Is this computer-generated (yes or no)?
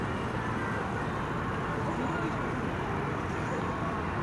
no